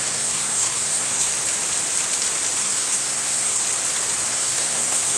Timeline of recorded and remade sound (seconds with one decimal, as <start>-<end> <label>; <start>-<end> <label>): 0.0-1.3 remade; 1.3-2.6 recorded; 2.6-3.6 remade; 3.6-4.3 recorded; 4.3-5.2 remade